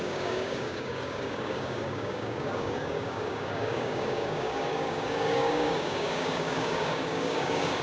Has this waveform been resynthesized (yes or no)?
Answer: yes